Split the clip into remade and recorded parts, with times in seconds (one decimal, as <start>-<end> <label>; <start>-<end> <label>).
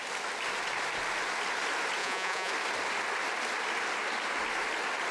0.0-2.0 recorded; 2.0-2.5 remade; 2.5-5.1 recorded